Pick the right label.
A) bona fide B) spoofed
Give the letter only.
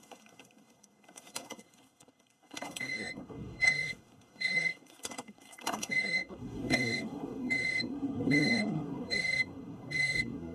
B